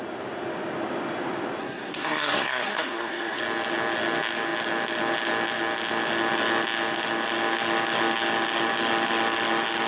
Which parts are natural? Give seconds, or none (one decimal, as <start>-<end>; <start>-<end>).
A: 0.0-1.6; 3.4-9.9